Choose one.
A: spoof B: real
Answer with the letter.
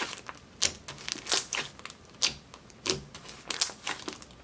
B